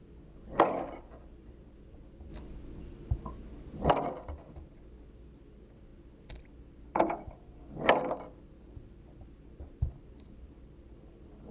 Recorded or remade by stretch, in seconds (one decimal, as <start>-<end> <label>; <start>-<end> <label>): 0.0-11.5 recorded